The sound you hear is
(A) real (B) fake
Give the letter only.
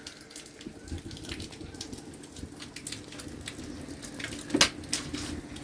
A